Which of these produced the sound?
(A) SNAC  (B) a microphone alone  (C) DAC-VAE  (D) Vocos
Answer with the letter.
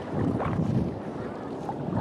B